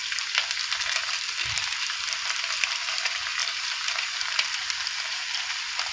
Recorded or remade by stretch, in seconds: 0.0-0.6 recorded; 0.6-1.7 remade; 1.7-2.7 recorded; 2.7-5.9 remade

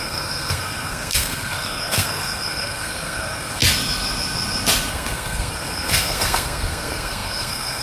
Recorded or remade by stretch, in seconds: 0.0-3.6 remade; 3.6-4.9 recorded; 4.9-7.8 remade